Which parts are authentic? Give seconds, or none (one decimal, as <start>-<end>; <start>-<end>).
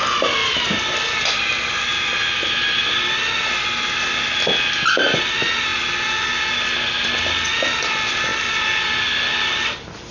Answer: 0.0-0.4; 1.9-8.3